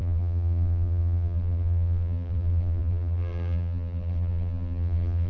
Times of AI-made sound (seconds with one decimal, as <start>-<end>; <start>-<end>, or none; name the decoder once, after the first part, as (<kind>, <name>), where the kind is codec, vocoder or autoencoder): 0.0-5.3 (vocoder, BigVGAN v2)